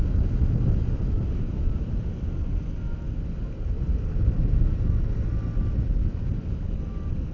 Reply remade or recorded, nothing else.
recorded